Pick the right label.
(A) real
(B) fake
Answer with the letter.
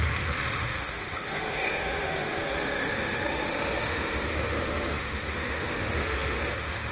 B